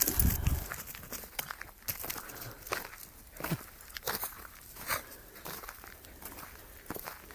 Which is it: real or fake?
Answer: real